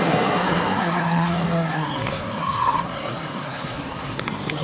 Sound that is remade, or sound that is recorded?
remade